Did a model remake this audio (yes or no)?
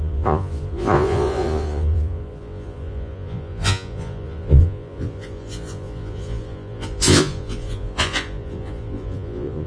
yes